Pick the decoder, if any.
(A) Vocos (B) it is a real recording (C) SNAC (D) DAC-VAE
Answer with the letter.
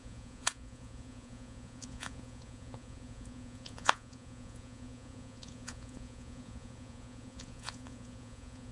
A